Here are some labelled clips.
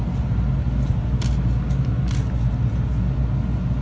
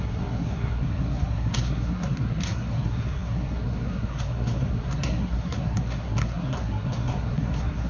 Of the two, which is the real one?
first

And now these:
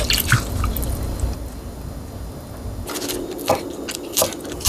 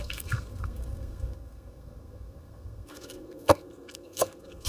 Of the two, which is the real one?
first